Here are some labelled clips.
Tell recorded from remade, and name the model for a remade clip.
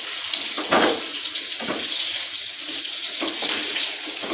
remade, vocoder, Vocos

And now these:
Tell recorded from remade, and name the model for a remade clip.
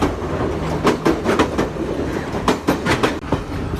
recorded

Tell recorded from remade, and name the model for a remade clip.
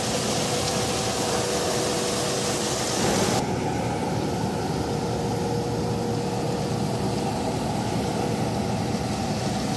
recorded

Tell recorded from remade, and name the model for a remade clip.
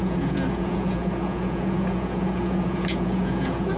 remade, vocoder, Vocos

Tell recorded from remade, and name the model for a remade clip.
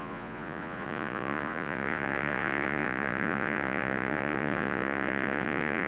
remade, vocoder, Vocos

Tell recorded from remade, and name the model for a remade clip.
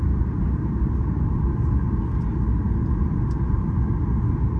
recorded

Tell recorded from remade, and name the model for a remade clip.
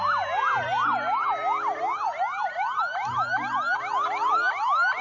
recorded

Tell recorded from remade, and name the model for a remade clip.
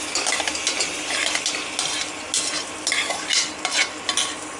recorded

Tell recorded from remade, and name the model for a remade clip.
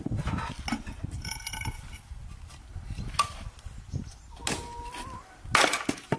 recorded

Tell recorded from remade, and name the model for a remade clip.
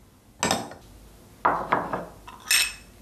recorded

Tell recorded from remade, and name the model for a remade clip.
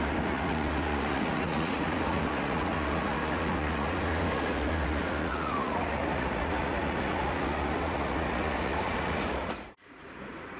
remade, vocoder, Vocos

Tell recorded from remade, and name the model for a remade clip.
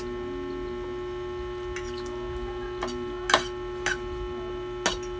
recorded